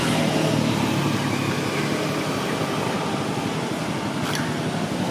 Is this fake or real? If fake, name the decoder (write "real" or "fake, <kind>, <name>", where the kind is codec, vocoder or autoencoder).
real